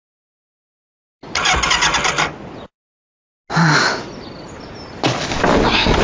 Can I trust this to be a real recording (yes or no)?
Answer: yes